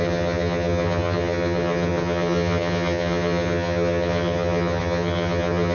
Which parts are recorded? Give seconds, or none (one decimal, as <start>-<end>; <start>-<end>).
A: none